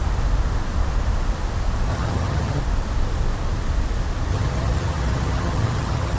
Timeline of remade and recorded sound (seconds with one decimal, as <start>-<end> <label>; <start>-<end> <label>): 0.0-1.9 recorded; 1.9-2.6 remade; 2.6-4.3 recorded; 4.3-6.2 remade